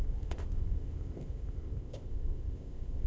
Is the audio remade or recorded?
remade